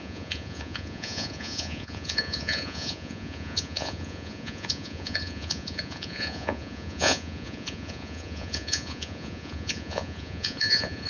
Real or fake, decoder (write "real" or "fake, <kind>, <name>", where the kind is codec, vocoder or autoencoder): fake, vocoder, Vocos